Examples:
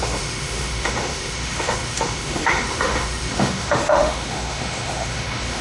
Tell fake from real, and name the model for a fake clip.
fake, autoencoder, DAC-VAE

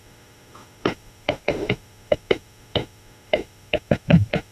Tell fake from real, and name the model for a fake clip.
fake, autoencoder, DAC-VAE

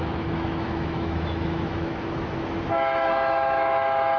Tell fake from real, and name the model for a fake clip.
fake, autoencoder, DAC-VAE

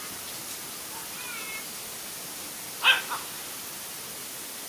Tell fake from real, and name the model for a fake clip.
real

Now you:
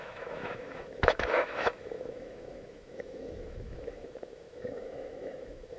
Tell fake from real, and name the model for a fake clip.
fake, autoencoder, DAC-VAE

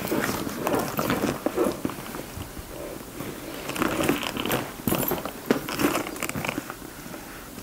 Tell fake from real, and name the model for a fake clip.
real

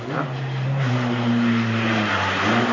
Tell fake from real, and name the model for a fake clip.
real